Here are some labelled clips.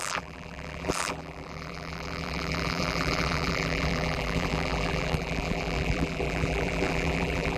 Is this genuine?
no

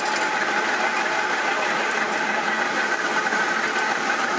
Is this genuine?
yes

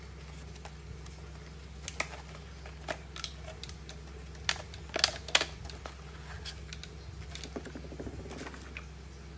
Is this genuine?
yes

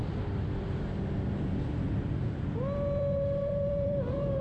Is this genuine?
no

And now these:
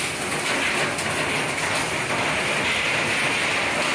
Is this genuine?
yes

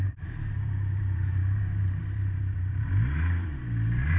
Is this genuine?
no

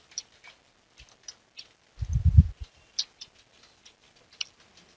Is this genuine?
yes